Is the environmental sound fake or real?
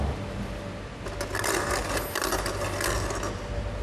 real